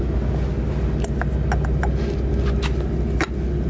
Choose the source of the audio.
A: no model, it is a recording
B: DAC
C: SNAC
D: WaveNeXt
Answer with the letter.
A